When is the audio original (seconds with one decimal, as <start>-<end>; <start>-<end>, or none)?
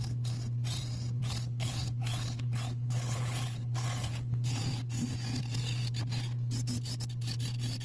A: 0.0-1.2; 4.6-7.8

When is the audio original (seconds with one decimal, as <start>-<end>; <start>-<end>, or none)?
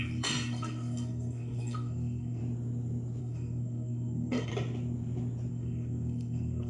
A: 2.4-3.2; 4.5-5.5